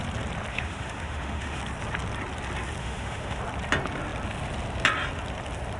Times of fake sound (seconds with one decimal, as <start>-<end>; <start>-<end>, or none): 0.5-1.6; 2.8-3.4